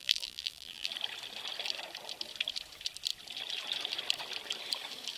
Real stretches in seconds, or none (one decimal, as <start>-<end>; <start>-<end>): 0.9-5.2